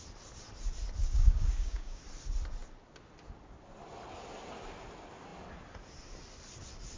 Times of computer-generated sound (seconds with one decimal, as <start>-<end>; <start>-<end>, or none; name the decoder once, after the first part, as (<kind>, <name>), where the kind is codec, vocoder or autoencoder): 1.0-2.0 (codec, DAC)

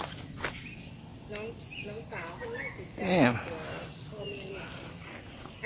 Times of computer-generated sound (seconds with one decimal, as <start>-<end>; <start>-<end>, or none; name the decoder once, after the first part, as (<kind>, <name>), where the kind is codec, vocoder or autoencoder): none

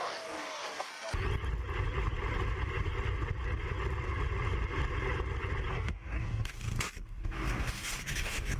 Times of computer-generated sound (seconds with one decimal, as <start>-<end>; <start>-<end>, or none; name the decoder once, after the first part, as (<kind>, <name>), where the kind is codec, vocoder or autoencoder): 0.0-0.9 (codec, DAC); 5.7-8.6

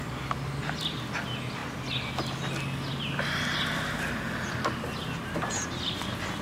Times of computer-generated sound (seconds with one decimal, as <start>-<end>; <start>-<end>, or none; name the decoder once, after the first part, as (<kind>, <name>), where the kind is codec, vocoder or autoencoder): none

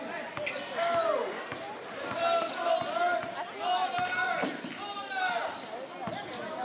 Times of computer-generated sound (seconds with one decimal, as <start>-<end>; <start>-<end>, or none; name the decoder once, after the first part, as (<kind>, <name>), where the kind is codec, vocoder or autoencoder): none